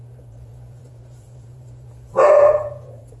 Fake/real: fake